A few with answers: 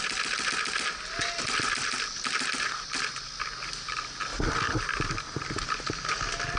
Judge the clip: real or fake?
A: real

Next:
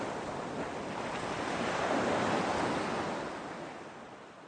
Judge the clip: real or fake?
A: real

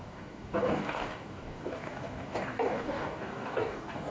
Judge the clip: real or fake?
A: fake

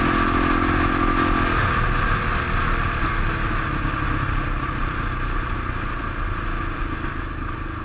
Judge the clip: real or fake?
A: real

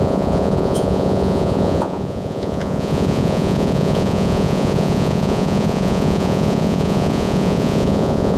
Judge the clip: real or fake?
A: fake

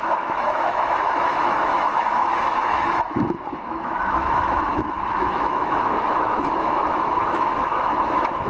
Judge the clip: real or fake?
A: fake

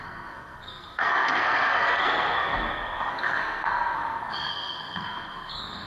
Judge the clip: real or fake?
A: fake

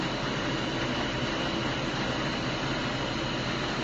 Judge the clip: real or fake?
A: real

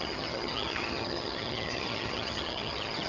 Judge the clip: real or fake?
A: fake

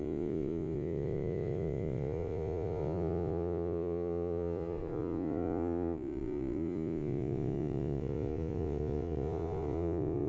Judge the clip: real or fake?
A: fake